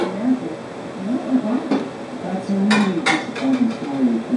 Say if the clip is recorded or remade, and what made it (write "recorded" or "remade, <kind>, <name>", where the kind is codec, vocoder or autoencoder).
recorded